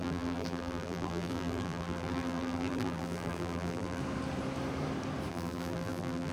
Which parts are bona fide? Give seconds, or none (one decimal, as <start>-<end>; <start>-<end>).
4.0-5.3